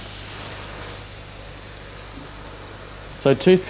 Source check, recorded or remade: recorded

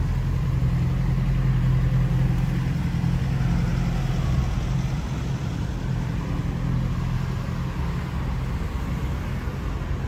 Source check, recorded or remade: recorded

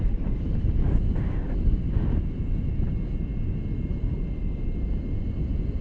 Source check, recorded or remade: recorded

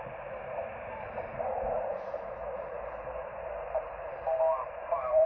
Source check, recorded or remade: remade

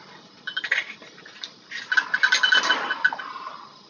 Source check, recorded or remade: recorded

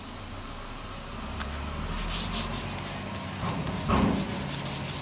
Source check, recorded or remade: recorded